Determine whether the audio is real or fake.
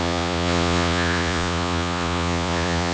fake